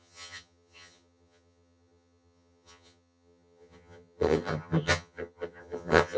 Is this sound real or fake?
fake